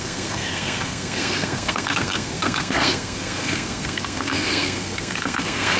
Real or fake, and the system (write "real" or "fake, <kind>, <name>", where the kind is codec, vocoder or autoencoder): fake, codec, SNAC